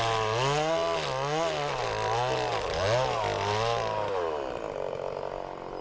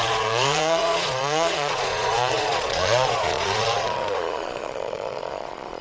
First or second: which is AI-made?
second